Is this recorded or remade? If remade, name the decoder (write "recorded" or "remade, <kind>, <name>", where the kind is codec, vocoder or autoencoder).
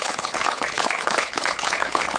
remade, codec, HILCodec